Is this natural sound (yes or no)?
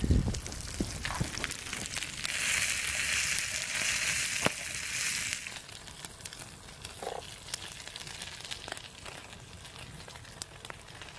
yes